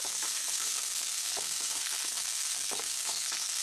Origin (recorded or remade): remade